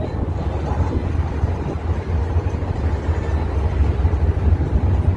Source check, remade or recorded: recorded